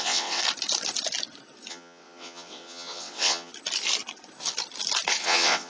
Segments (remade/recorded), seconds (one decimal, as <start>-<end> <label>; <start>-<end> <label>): 0.0-0.4 remade; 0.4-1.7 recorded; 1.7-3.5 remade; 3.5-5.2 recorded; 5.2-5.7 remade

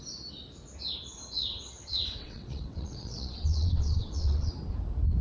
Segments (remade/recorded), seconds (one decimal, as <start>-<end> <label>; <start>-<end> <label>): 0.0-1.4 recorded; 1.4-4.5 remade; 4.5-5.2 recorded

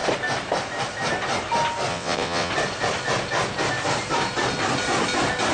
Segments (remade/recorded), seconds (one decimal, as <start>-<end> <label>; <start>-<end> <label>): 0.0-1.9 recorded; 1.9-2.5 remade; 2.5-5.5 recorded

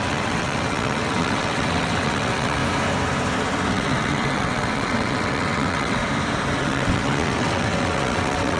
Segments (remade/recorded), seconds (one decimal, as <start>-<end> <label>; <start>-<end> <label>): 0.0-2.6 remade; 2.6-3.7 recorded; 3.7-6.0 remade; 6.0-6.6 recorded; 6.6-8.6 remade

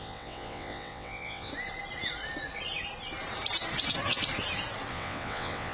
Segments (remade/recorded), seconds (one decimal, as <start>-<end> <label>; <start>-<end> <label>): 0.0-1.5 remade; 1.5-4.9 recorded; 4.9-5.7 remade

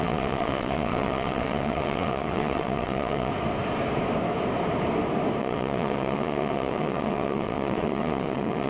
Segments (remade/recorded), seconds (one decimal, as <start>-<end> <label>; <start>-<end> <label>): 0.0-3.3 remade; 3.3-5.4 recorded; 5.4-8.7 remade